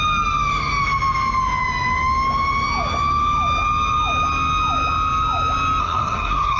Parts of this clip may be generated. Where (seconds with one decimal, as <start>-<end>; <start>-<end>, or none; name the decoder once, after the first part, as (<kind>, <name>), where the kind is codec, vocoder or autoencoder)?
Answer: 5.8-6.6 (codec, SNAC)